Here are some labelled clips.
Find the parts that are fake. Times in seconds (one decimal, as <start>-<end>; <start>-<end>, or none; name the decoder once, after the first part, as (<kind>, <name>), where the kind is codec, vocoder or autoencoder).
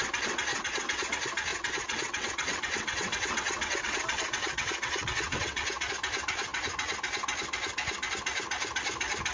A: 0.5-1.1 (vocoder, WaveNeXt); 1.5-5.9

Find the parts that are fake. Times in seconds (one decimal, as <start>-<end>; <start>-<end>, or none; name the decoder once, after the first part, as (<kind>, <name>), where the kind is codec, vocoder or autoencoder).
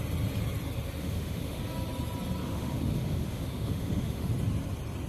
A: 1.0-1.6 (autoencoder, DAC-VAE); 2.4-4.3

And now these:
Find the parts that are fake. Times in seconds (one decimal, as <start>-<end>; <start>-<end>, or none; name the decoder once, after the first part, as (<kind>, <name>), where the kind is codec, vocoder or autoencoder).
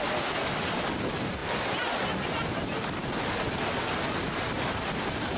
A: none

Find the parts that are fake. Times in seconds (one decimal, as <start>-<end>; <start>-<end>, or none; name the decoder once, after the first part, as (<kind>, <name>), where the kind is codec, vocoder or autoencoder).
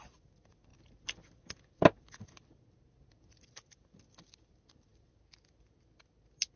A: none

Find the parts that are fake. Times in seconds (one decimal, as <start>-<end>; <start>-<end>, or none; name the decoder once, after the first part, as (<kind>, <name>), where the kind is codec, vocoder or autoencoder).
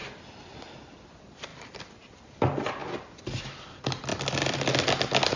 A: none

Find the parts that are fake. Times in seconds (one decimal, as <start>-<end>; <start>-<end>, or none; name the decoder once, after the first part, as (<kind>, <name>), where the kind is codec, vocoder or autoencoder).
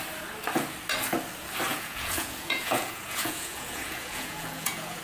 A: 1.7-5.0 (vocoder, Vocos)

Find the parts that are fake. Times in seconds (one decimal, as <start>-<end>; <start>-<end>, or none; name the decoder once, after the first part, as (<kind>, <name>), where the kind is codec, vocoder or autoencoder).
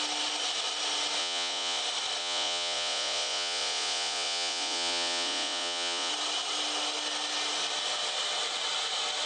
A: 1.2-1.8 (vocoder, Vocos); 2.2-6.1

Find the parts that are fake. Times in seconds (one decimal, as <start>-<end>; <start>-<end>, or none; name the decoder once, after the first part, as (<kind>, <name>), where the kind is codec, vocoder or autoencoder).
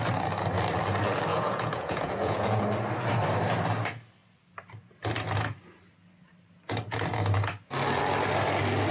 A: 1.3-2.6 (vocoder, Vocos)